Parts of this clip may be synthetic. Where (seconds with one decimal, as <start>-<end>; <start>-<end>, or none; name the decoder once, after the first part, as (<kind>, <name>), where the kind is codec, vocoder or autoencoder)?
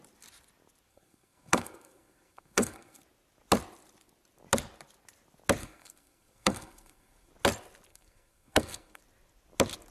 0.9-3.0 (codec, SNAC); 5.6-7.3; 7.9-9.0